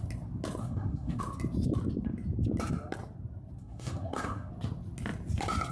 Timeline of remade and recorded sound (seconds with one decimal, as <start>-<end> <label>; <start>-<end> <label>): 0.0-0.6 recorded; 0.6-1.2 remade; 1.2-3.6 recorded; 3.6-4.5 remade; 4.5-5.7 recorded